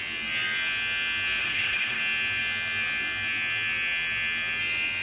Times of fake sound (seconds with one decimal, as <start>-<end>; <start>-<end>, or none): 1.4-2.0

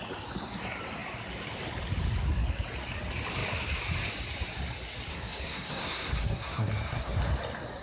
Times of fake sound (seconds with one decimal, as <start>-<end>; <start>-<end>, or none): 5.1-7.2

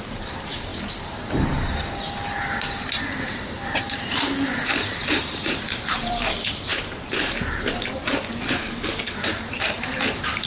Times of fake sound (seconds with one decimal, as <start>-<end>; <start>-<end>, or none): 0.0-10.5

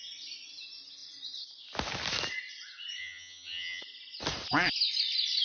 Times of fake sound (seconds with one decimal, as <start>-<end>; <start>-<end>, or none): 3.0-3.8

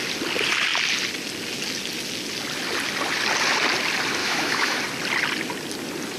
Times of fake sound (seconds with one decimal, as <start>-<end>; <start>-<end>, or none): 4.2-4.8